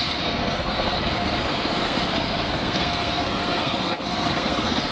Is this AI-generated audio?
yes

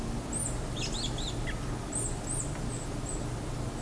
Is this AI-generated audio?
no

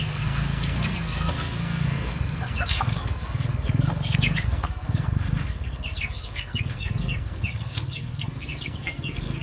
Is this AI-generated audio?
yes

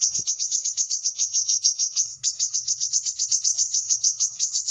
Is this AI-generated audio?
yes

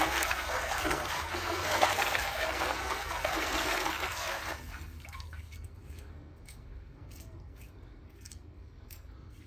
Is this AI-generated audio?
yes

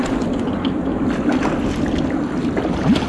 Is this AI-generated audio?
no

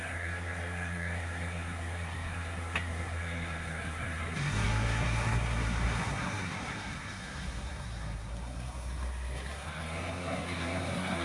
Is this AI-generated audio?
yes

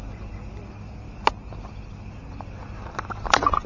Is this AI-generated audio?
no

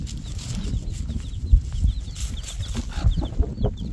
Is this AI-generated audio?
no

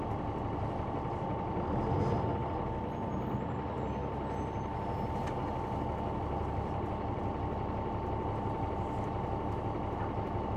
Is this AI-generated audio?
no